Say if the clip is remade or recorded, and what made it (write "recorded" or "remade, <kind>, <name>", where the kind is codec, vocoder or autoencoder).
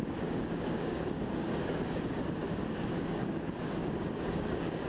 remade, codec, DAC